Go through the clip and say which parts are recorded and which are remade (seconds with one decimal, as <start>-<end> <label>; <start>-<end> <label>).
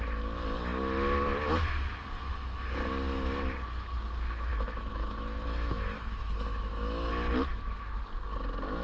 0.0-4.5 recorded; 4.5-7.1 remade; 7.1-7.5 recorded; 7.5-8.0 remade; 8.0-8.8 recorded